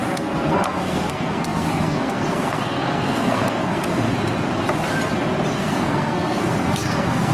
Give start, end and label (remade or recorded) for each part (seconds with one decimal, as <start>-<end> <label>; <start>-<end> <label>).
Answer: 0.0-4.1 remade; 4.1-5.5 recorded; 5.5-7.3 remade